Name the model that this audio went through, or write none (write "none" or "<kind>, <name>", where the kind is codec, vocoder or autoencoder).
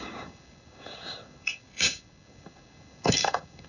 codec, DAC